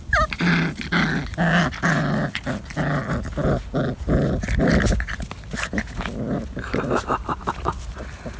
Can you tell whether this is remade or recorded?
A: recorded